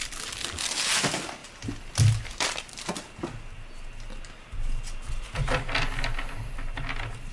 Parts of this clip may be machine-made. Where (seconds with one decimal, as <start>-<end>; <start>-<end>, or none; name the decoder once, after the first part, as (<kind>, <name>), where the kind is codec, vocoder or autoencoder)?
none